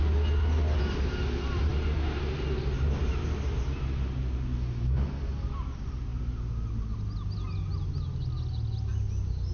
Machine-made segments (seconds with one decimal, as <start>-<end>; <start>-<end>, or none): none